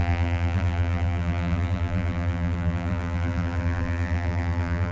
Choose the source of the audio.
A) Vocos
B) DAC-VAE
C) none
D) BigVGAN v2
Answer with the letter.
D